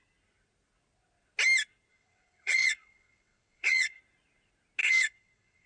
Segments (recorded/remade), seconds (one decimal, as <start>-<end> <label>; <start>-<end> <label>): 0.0-1.9 recorded; 1.9-4.0 remade; 4.0-4.8 recorded; 4.8-5.7 remade